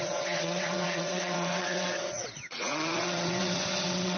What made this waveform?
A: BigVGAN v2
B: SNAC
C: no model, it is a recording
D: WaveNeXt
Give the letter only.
D